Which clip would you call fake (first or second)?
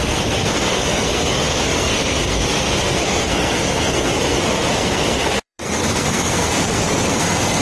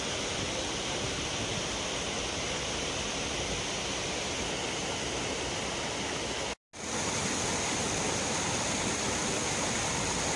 first